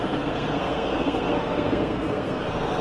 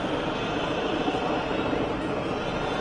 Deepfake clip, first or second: first